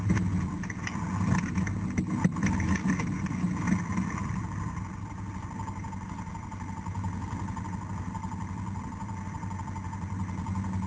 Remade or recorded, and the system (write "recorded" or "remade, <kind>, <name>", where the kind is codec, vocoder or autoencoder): recorded